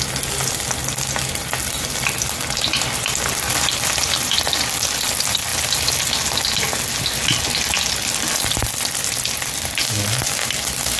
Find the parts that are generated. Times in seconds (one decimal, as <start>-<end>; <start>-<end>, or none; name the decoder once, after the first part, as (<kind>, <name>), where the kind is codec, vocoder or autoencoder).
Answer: none